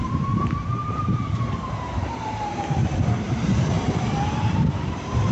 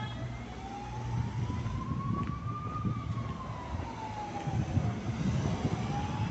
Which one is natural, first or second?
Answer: second